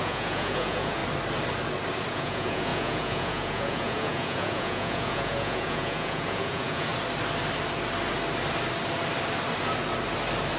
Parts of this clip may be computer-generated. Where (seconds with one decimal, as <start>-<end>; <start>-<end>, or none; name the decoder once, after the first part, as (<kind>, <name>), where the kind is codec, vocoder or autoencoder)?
0.0-1.0 (vocoder, Vocos); 2.1-6.9